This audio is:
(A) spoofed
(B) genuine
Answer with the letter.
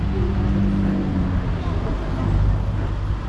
B